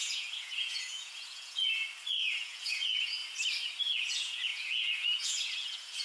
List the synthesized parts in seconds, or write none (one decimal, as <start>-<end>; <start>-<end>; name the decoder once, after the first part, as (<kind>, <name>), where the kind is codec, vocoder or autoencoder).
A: 0.0-1.8 (vocoder, Vocos); 2.4-3.2; 3.8-6.0